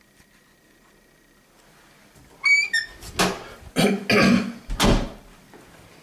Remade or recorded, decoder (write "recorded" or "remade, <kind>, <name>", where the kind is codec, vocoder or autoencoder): recorded